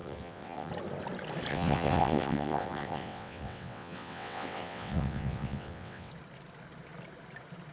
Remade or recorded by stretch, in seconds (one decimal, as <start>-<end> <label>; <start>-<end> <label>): 0.0-0.7 remade; 0.7-1.5 recorded; 1.5-6.1 remade; 6.1-7.7 recorded